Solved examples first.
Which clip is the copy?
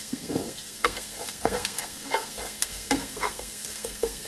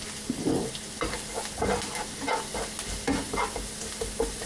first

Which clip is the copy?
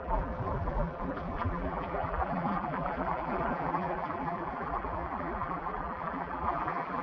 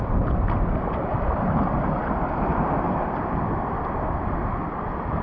first